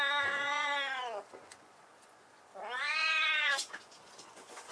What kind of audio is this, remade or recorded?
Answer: remade